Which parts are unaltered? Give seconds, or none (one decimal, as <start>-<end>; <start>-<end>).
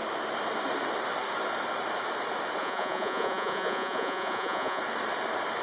0.0-2.6; 4.8-5.6